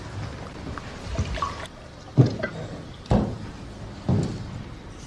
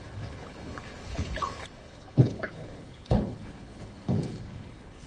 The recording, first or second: first